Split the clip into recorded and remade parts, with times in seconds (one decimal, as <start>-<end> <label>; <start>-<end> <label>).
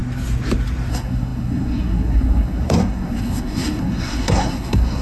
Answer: 0.0-0.9 recorded; 0.9-5.0 remade